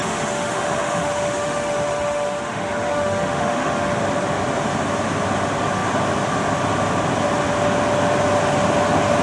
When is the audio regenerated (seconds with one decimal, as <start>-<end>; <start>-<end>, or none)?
0.0-4.0